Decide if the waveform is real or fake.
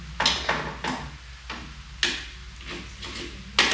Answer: real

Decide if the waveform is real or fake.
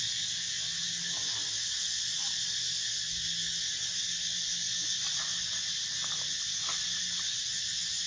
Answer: real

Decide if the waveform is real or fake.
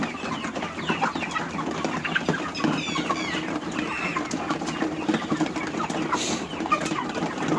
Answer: real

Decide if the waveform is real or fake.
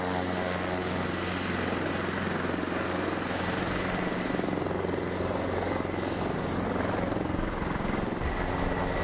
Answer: real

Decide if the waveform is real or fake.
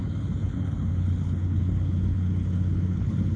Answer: fake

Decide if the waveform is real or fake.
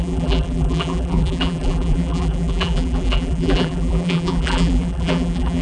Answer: fake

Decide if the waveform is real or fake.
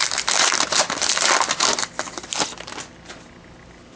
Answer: real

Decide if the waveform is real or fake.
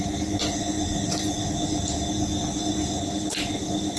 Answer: real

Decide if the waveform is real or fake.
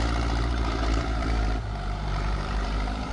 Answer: fake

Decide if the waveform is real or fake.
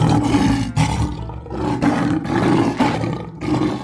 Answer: real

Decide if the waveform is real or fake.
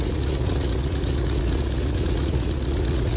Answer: fake